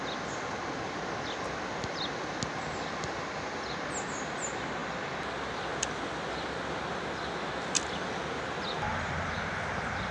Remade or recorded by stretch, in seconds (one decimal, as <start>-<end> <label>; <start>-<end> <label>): 0.0-10.1 recorded